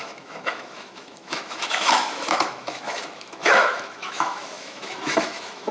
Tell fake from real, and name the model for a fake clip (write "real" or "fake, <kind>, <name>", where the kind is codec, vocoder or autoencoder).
fake, autoencoder, DAC-VAE